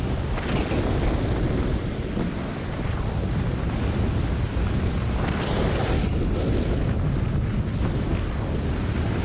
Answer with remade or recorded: recorded